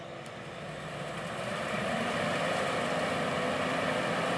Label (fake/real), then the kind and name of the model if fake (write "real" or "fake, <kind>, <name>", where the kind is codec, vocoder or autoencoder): real